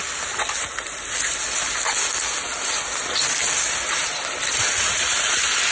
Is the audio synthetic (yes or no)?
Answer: no